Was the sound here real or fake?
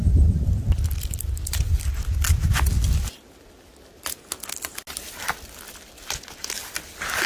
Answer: real